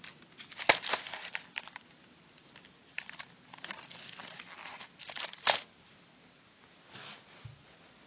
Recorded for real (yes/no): yes